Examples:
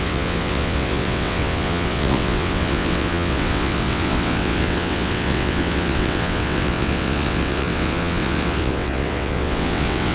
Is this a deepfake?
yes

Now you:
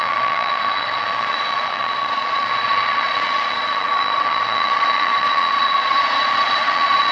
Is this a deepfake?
yes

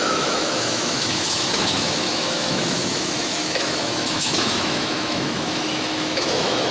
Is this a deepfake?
yes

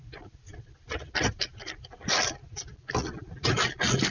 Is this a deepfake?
no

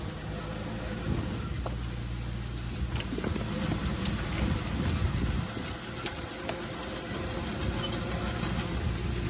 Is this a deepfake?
no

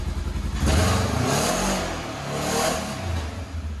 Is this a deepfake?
no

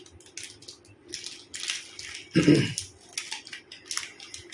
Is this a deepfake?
no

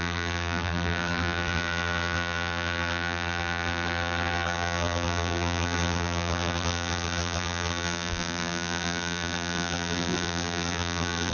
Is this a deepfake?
yes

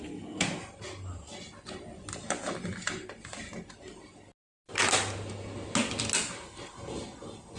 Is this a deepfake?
no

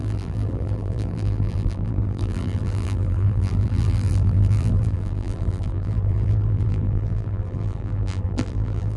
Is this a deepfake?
yes